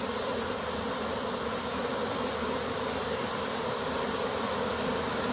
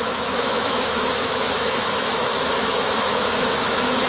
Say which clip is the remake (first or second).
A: second